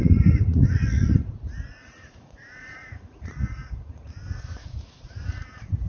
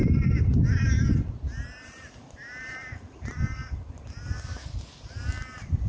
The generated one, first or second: first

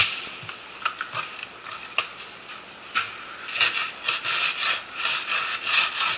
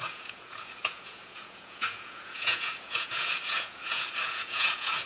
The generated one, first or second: second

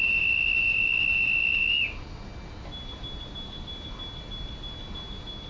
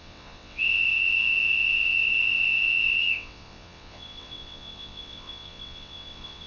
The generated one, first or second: second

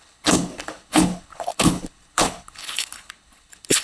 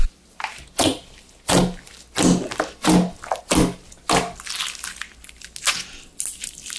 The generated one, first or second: first